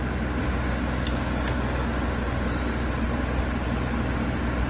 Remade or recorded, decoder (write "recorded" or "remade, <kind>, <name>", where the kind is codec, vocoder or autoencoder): recorded